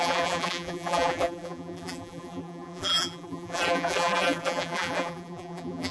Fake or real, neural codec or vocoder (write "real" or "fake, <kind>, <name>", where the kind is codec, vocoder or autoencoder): fake, vocoder, BigVGAN v2